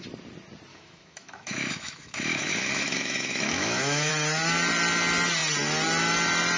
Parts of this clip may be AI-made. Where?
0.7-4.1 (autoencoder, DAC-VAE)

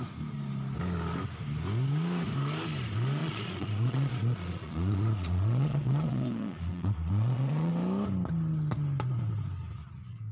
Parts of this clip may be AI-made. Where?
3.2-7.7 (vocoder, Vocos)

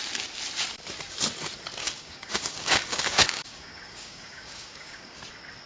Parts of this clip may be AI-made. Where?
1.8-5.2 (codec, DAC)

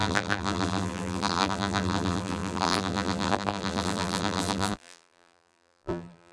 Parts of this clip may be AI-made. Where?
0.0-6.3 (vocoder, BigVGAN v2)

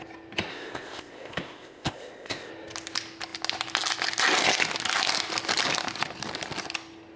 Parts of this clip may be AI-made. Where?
0.5-2.5 (codec, ZipCodec)